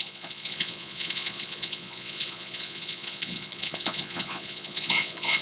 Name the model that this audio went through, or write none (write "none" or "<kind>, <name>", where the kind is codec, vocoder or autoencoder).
vocoder, Vocos